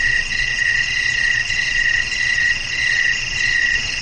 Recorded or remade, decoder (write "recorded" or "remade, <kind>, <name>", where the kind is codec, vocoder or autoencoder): remade, vocoder, Vocos